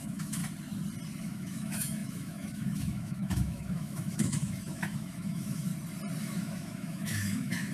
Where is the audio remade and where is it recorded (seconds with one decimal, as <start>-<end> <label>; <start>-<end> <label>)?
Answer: 0.0-0.4 remade; 0.4-1.2 recorded; 1.2-5.7 remade; 5.7-6.2 recorded; 6.2-7.7 remade

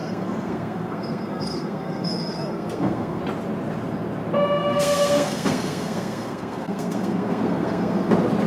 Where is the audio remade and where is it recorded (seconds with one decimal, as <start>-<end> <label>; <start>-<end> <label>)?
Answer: 0.0-3.2 remade; 3.2-4.6 recorded; 4.6-8.1 remade; 8.1-8.5 recorded

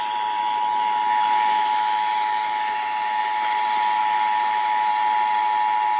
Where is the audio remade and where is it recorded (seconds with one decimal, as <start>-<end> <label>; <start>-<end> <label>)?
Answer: 0.0-0.4 recorded; 0.4-3.2 remade; 3.2-4.0 recorded; 4.0-4.9 remade; 4.9-6.0 recorded

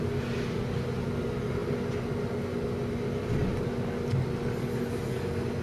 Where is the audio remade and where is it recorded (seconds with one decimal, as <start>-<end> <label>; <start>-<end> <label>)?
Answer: 0.0-5.6 recorded

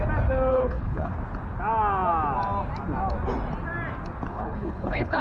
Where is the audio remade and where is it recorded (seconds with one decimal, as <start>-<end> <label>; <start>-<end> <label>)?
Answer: 0.0-0.5 recorded; 0.5-1.1 remade; 1.1-4.3 recorded; 4.3-5.2 remade

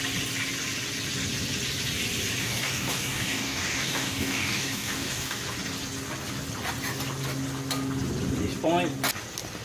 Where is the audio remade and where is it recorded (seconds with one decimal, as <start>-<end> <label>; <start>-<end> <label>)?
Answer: 0.0-2.4 recorded; 2.4-5.4 remade; 5.4-9.6 recorded